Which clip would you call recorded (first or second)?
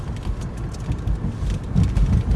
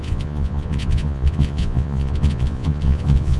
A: first